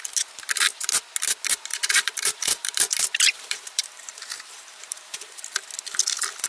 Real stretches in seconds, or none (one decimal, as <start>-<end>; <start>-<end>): 0.0-1.7; 5.4-6.5